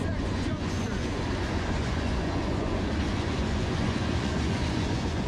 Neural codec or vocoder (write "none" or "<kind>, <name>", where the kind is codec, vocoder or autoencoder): vocoder, Vocos